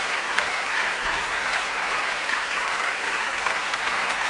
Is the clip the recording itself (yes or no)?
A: no